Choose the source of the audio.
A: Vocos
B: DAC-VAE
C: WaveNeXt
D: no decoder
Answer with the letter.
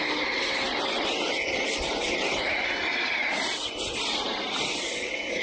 D